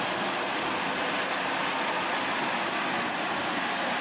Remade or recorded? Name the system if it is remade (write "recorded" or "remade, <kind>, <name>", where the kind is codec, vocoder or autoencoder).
recorded